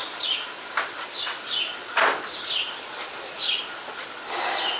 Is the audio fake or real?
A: real